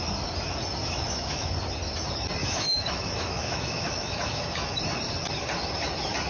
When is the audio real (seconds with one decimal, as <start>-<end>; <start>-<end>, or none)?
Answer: 0.0-0.8; 1.5-2.4; 4.8-6.3